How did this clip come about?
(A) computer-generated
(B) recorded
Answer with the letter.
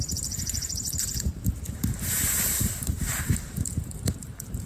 A